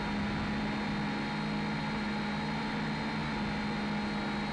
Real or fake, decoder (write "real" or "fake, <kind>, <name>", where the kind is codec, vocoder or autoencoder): real